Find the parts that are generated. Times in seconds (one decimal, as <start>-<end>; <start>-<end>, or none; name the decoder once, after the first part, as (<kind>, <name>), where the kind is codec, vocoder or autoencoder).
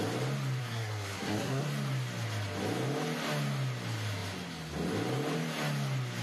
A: 0.6-1.6 (codec, SNAC)